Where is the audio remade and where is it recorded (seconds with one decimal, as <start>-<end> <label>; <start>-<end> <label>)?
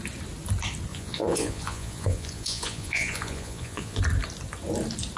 0.0-0.9 recorded; 0.9-4.0 remade; 4.0-5.2 recorded